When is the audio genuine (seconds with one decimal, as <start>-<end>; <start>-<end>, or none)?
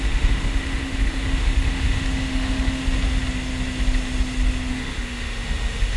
2.8-4.7